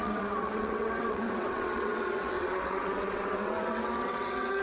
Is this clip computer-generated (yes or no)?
yes